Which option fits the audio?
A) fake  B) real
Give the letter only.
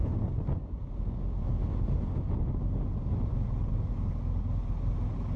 B